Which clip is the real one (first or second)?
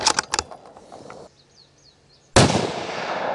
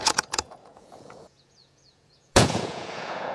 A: first